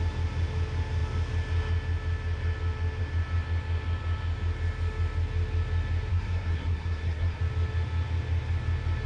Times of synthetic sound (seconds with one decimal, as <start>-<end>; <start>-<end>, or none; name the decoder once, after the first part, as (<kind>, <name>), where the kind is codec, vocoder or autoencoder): 6.1-7.4 (codec, SNAC)